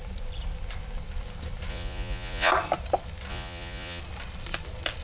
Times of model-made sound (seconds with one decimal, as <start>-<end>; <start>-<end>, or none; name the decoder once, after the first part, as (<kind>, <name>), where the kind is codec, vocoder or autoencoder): 1.7-2.5 (vocoder, Vocos); 3.3-4.0